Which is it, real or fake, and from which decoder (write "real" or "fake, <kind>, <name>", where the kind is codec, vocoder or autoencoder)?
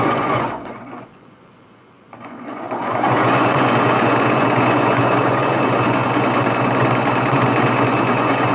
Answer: fake, vocoder, Vocos